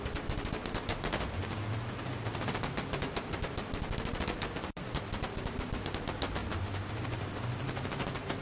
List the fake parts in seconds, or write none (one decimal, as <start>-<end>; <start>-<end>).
6.4-7.0